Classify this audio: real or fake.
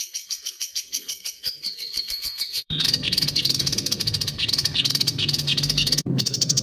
fake